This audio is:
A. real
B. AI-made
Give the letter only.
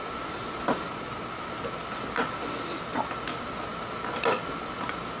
A